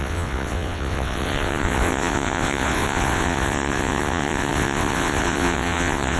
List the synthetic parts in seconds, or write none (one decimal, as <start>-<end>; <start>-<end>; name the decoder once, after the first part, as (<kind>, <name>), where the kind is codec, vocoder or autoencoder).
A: 0.0-6.2 (vocoder, WaveNeXt)

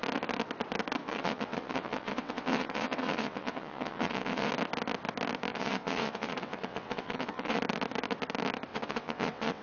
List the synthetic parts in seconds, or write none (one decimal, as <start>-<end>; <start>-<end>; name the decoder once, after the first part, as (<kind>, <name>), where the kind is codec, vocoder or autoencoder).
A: 1.0-4.5 (vocoder, WaveNeXt); 5.5-7.6; 8.7-9.6

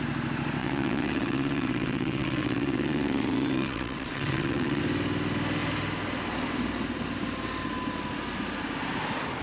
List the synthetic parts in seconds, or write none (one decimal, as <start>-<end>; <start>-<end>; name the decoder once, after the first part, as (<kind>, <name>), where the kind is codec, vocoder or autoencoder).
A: 0.6-4.8 (vocoder, WaveNeXt)

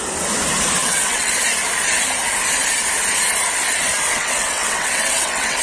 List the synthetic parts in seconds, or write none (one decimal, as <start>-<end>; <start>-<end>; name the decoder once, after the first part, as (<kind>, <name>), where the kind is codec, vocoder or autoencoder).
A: 0.8-1.3 (vocoder, WaveNeXt); 4.1-5.6

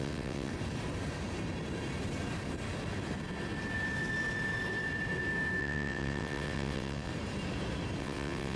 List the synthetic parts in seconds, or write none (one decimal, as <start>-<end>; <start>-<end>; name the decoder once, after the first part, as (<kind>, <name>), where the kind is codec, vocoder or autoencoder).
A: 0.0-0.5 (vocoder, WaveNeXt); 5.6-7.1; 8.0-8.6

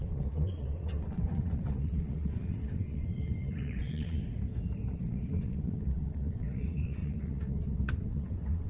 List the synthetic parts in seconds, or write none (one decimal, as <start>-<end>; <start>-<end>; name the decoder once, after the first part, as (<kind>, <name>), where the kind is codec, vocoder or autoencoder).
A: 0.0-4.2 (vocoder, WaveNeXt); 4.9-8.7